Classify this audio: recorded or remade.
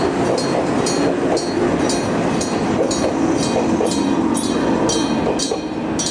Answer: recorded